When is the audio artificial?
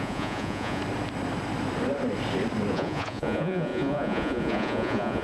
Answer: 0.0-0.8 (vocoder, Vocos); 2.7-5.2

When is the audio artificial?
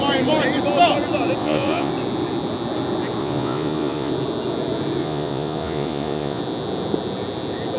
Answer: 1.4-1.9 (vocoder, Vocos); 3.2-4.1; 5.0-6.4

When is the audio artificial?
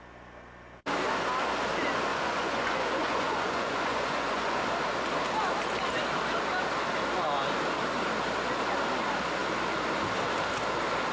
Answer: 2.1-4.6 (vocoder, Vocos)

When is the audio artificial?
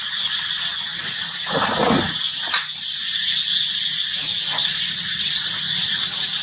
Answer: 0.9-1.7 (vocoder, Vocos); 4.7-5.6